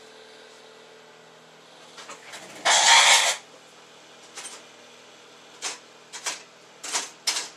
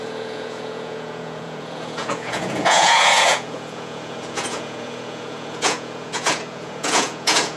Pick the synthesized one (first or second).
second